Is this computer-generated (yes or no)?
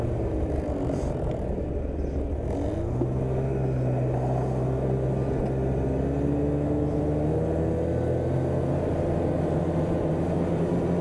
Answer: no